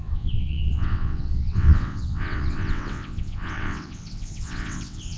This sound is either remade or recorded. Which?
remade